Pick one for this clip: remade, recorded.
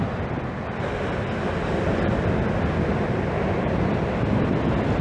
recorded